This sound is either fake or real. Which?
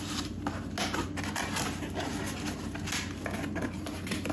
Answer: real